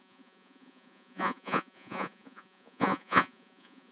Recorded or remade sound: remade